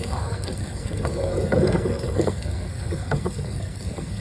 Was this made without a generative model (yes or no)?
no